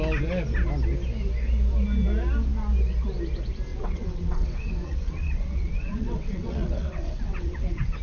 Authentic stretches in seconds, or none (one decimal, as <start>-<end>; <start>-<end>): 0.0-3.7